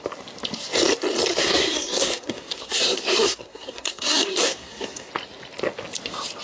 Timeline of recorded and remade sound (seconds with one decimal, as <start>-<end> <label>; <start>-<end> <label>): 0.0-1.3 recorded; 1.3-5.1 remade; 5.1-6.4 recorded